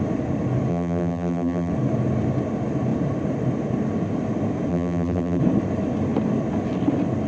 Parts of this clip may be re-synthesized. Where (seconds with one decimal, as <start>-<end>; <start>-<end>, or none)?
0.7-1.7; 4.7-5.4